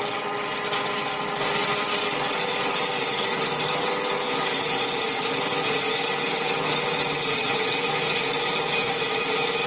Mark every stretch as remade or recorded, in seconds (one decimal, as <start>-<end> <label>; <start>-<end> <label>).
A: 0.0-9.7 recorded